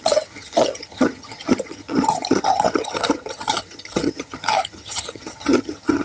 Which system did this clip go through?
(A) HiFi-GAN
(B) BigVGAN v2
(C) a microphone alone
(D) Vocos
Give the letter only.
A